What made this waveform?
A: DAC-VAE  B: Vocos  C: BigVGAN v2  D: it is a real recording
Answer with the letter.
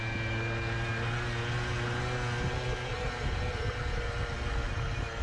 D